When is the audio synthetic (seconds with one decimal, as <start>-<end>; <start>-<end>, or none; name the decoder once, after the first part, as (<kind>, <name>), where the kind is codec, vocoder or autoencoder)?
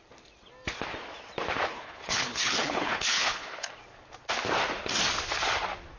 1.7-3.7 (codec, HILCodec)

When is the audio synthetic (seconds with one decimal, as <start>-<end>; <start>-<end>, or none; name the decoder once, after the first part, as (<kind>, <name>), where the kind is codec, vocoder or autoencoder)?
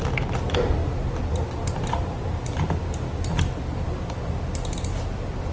none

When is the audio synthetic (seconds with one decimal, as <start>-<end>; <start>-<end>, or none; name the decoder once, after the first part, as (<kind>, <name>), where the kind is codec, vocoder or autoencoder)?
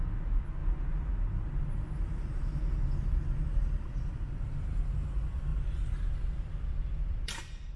none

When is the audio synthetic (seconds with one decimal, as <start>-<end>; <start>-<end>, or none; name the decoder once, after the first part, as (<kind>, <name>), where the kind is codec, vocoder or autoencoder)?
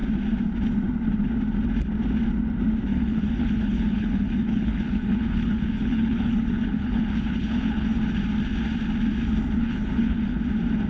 2.9-8.0 (codec, HILCodec); 9.6-10.4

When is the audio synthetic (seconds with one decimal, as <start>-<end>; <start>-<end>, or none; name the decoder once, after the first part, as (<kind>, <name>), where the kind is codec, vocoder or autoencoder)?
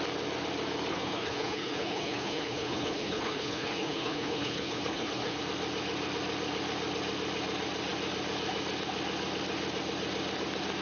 0.9-5.4 (codec, HILCodec)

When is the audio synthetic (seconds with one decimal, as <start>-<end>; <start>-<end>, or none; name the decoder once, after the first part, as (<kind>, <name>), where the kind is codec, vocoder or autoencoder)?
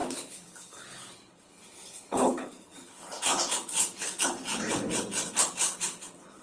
0.0-6.4 (codec, HILCodec)